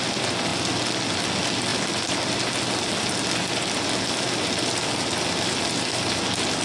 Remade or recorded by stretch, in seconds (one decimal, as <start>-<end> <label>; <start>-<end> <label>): 0.0-6.6 recorded